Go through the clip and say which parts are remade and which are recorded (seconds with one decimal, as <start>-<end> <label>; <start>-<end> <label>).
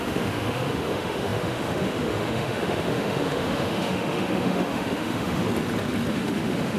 0.0-5.4 remade; 5.4-6.1 recorded; 6.1-6.8 remade